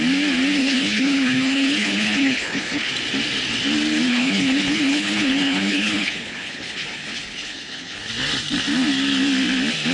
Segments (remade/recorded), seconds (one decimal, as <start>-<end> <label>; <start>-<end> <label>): 0.0-0.6 recorded; 0.6-2.9 remade; 2.9-4.1 recorded; 4.1-8.1 remade; 8.1-9.9 recorded

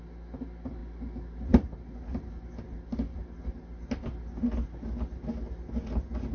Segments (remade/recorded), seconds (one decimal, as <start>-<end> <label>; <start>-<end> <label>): 0.0-6.3 recorded

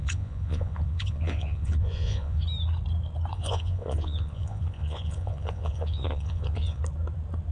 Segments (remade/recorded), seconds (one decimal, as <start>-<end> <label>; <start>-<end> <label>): 0.0-2.4 remade; 2.4-3.3 recorded; 3.3-6.8 remade; 6.8-7.5 recorded

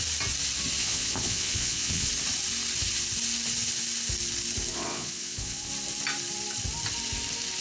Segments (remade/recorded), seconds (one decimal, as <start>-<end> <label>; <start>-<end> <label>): 0.0-0.8 recorded; 0.8-2.1 remade; 2.1-4.7 recorded; 4.7-5.7 remade; 5.7-7.6 recorded

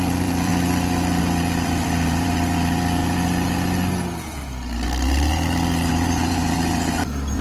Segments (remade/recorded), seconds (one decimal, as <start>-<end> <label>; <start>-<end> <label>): 0.0-0.5 remade; 0.5-1.2 recorded; 1.2-3.0 remade; 3.0-5.9 recorded; 5.9-7.4 remade

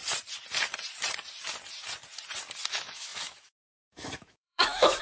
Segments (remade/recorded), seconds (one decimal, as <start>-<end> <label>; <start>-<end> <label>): 0.0-2.7 recorded; 2.7-5.0 remade

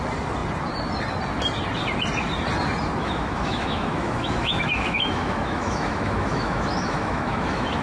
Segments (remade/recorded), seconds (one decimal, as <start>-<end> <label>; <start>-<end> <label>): 0.0-3.0 recorded; 3.0-7.8 remade

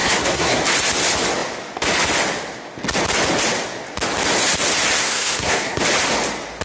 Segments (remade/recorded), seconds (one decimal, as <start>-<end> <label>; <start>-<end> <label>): 0.0-0.6 remade; 0.6-5.0 recorded; 5.0-5.8 remade; 5.8-6.6 recorded